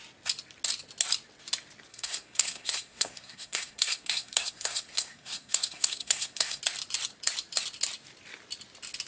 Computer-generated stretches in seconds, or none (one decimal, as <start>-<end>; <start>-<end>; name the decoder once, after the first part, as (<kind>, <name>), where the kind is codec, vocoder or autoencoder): 1.9-6.6 (codec, SNAC)